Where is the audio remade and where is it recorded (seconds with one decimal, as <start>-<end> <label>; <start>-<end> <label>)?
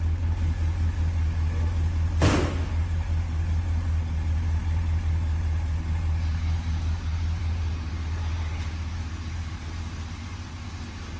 0.0-11.2 recorded